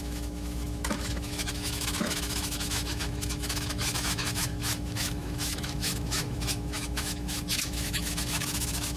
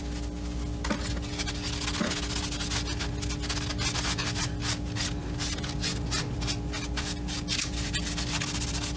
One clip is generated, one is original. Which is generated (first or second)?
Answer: first